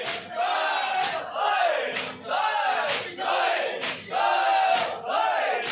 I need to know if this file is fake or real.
real